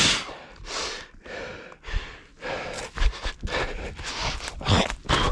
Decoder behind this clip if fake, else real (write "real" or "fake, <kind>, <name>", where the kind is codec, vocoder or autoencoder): real